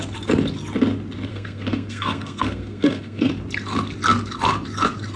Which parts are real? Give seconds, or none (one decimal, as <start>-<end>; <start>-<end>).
0.0-1.3; 3.3-5.2